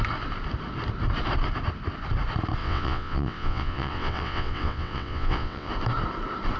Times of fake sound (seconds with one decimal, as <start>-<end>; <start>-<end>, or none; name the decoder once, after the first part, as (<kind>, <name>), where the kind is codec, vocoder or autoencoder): 2.6-5.7 (vocoder, WaveNeXt)